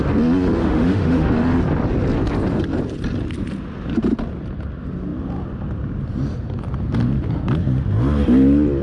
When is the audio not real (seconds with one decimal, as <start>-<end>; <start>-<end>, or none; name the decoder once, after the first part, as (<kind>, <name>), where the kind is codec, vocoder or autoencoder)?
0.6-1.3 (autoencoder, DAC-VAE)